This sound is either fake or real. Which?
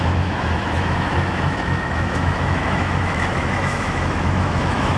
fake